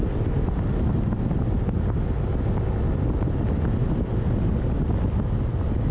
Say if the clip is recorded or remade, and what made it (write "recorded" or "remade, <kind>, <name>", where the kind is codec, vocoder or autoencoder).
recorded